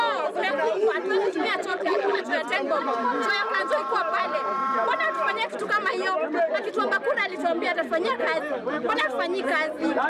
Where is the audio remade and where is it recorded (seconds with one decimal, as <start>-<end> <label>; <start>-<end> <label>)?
0.0-1.7 recorded; 1.7-2.2 remade; 2.2-10.1 recorded